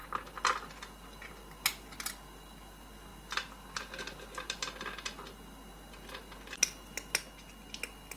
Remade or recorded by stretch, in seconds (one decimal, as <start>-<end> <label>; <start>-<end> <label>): 0.0-8.2 recorded